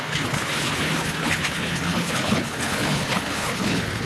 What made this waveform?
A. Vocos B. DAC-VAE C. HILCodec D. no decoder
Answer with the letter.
C